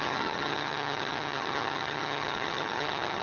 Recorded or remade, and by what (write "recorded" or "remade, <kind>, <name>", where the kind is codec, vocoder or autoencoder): remade, vocoder, HiFi-GAN